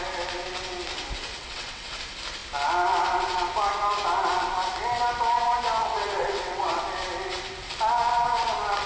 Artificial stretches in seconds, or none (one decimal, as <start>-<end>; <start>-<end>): 1.3-2.0; 5.8-6.8